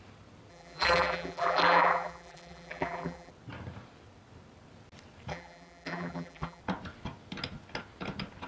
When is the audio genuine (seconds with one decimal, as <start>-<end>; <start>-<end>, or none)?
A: 0.0-0.5; 3.3-5.3; 6.6-8.5